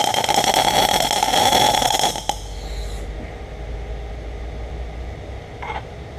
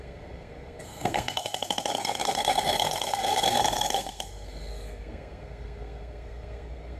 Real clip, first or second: first